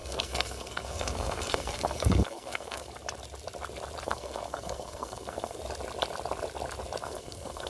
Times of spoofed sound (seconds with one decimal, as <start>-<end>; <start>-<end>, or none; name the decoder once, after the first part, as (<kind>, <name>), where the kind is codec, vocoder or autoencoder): 0.0-2.9 (codec, SNAC); 4.0-5.6; 7.0-7.7